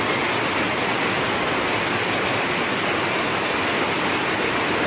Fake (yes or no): no